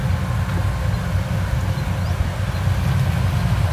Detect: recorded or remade recorded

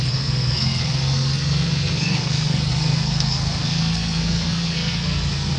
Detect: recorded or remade remade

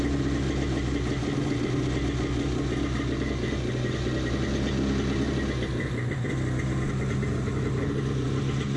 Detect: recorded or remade recorded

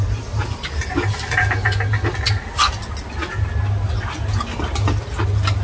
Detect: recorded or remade recorded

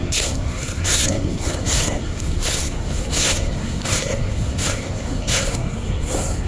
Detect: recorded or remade remade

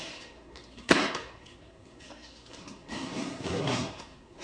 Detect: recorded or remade remade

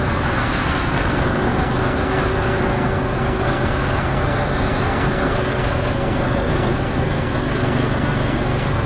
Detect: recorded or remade remade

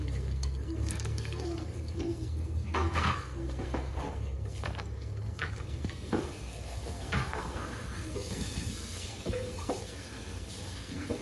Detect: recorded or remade remade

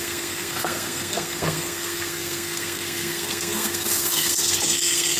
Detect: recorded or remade remade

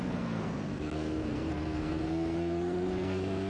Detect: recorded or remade remade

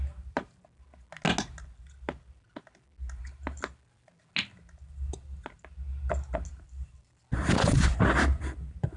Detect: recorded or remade recorded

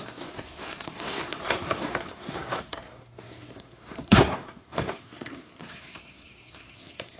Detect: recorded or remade remade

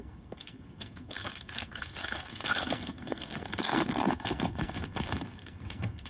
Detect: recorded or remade remade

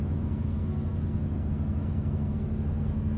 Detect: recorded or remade remade